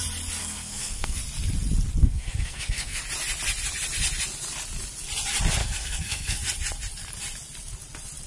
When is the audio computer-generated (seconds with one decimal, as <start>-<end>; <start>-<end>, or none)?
0.4-1.2; 2.0-3.0; 5.6-6.4